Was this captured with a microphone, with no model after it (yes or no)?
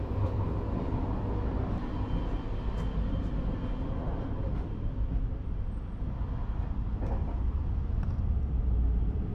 yes